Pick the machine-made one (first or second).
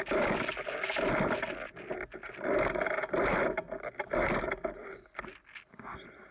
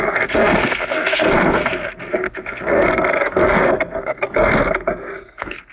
second